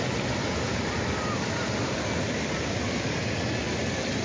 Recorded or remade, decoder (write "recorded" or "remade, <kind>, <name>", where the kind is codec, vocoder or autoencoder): recorded